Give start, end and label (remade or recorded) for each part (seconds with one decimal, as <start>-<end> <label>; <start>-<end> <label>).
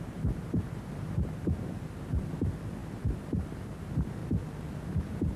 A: 0.0-4.2 remade; 4.2-5.0 recorded; 5.0-5.4 remade